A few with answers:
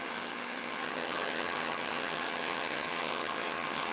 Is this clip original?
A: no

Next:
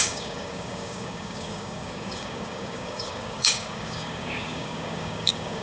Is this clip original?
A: no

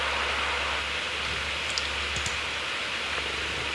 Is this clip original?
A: yes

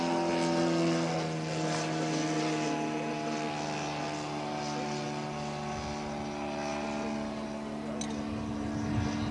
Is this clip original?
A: yes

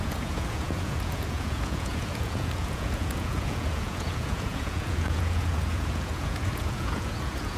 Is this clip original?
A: no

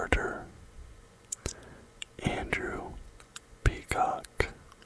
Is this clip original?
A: no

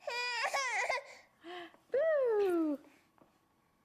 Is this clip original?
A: yes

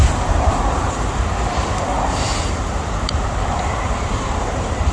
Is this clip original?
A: no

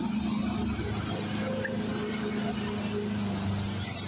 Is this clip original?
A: yes